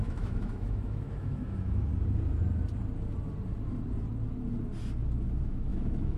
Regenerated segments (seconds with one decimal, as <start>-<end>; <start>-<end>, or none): 0.0-1.9; 5.3-6.2